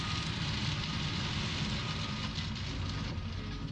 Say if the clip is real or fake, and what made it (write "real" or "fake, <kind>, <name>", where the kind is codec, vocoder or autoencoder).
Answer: real